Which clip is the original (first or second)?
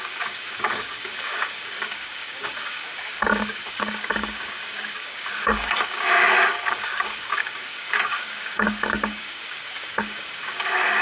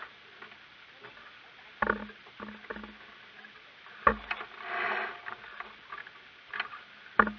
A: second